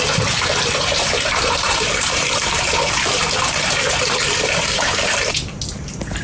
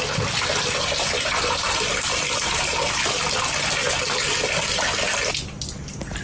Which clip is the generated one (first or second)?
first